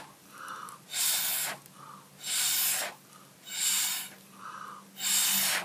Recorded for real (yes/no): yes